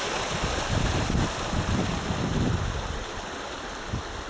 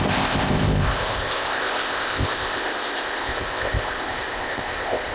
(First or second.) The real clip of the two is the first